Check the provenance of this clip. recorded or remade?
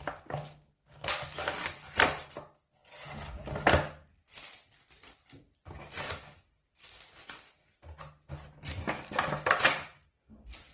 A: recorded